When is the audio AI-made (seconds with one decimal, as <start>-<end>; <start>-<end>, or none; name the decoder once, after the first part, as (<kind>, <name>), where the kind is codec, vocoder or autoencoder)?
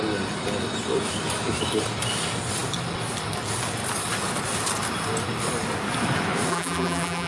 6.5-7.3 (vocoder, BigVGAN v2)